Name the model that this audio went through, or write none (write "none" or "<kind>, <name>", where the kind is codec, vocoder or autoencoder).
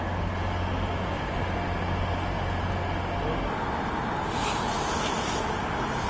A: none